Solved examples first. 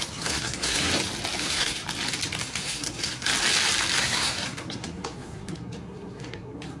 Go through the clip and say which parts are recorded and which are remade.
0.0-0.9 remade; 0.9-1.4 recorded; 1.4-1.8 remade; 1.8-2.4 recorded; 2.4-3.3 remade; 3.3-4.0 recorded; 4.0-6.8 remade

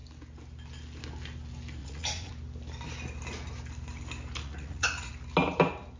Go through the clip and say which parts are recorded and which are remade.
0.0-1.8 recorded; 1.8-2.3 remade; 2.3-4.4 recorded; 4.4-5.1 remade; 5.1-6.0 recorded

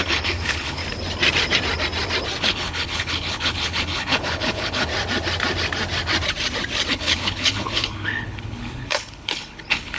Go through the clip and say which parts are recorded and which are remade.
0.0-0.8 remade; 0.8-2.4 recorded; 2.4-4.9 remade; 4.9-6.9 recorded; 6.9-10.0 remade

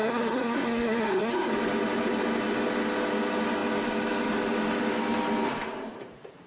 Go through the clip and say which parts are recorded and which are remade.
0.0-1.5 remade; 1.5-6.5 recorded

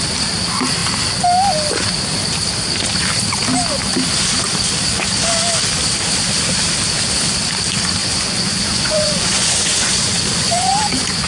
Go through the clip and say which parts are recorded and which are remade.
0.0-8.0 recorded; 8.0-11.3 remade

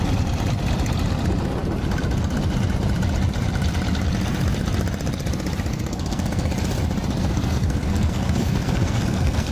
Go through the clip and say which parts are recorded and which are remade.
0.0-5.7 recorded; 5.7-6.5 remade; 6.5-7.2 recorded; 7.2-9.5 remade

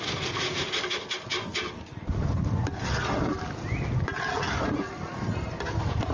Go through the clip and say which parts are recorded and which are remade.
0.0-6.1 recorded

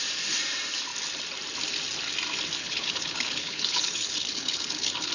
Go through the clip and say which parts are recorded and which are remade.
0.0-2.6 recorded; 2.6-5.1 remade